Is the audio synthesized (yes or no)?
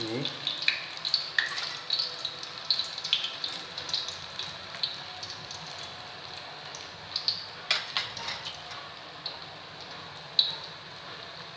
no